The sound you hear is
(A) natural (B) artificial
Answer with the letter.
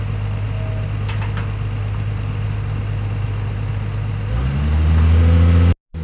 A